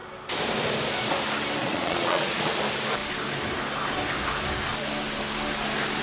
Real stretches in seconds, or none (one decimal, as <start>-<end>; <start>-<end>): 0.0-1.6; 2.5-6.0